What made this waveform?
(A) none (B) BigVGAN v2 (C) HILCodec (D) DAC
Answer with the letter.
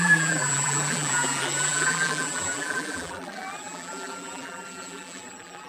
B